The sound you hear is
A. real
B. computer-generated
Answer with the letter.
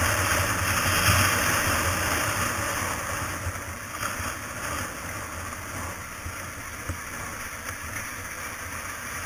A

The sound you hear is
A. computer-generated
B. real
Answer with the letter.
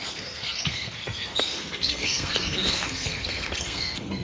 A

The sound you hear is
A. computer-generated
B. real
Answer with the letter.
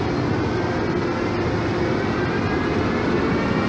B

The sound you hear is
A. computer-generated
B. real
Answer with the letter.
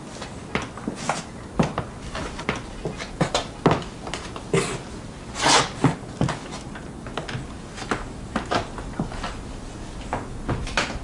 B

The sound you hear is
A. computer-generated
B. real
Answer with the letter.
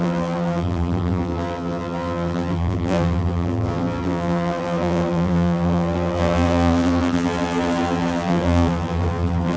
A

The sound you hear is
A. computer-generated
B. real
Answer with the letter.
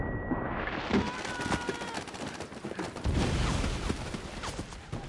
B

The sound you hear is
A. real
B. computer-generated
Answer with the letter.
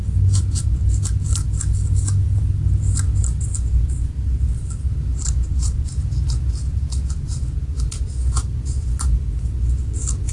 A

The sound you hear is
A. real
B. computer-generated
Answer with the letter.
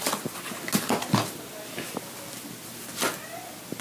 A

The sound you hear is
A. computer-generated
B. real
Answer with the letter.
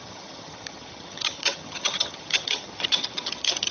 A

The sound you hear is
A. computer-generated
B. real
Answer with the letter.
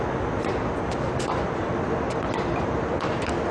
B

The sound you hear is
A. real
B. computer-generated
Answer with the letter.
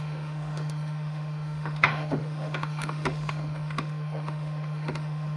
B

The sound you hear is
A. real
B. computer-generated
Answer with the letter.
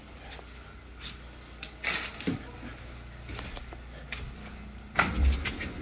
A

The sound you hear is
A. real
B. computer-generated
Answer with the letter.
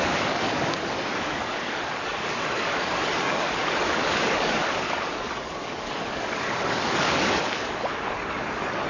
B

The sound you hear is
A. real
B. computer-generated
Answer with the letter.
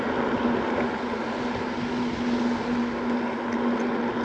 A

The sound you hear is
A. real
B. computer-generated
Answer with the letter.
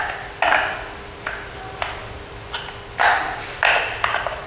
A